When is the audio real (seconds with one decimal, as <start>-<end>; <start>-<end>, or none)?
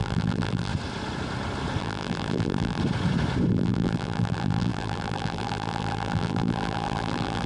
0.7-1.8; 2.8-3.5